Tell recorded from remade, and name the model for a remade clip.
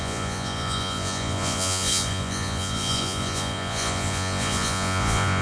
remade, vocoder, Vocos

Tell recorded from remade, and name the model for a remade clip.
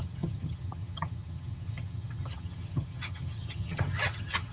remade, vocoder, HiFi-GAN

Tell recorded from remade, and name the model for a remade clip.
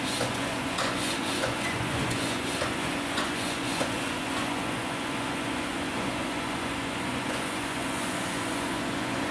remade, vocoder, Vocos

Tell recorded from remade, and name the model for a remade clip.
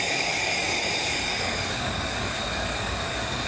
remade, codec, DAC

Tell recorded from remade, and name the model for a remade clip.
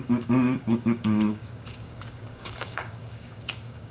remade, codec, DAC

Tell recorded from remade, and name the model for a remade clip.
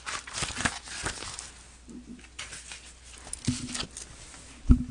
recorded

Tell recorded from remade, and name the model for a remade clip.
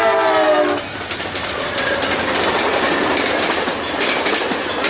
recorded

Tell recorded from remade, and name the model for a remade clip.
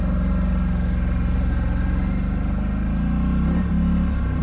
recorded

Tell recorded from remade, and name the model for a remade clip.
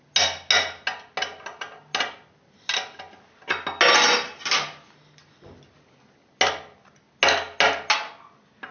recorded